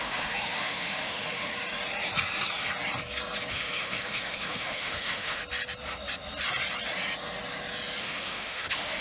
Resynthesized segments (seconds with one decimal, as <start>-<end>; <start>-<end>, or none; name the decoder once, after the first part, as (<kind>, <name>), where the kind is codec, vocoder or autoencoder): 0.0-1.5 (autoencoder, DAC-VAE); 3.5-5.4; 8.0-9.0